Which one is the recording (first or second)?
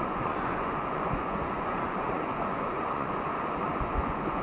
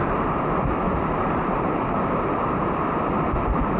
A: second